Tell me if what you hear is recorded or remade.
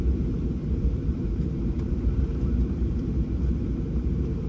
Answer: remade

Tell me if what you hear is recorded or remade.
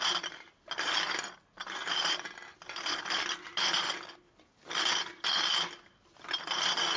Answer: recorded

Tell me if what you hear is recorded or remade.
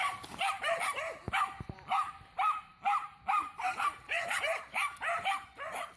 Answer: recorded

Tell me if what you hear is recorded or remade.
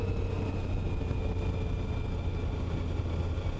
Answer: recorded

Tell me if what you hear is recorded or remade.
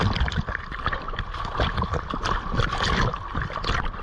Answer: recorded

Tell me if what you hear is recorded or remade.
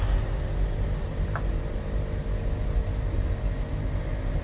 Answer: recorded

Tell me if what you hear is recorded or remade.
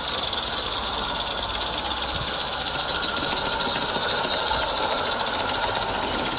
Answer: recorded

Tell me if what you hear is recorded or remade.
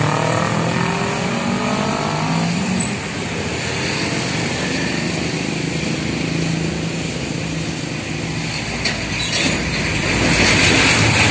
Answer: recorded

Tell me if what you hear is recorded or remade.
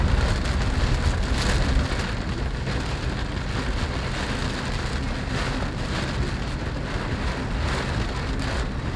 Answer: recorded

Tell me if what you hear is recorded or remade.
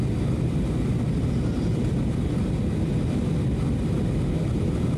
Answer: recorded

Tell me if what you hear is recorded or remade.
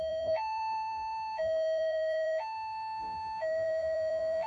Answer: remade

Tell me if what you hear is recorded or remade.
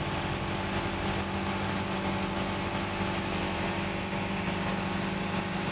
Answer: recorded